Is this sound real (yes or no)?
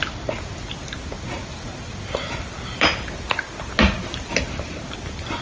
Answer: yes